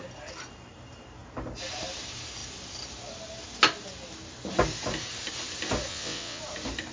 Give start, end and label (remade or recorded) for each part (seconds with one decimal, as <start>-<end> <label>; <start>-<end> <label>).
0.0-5.9 recorded; 5.9-6.4 remade; 6.4-6.9 recorded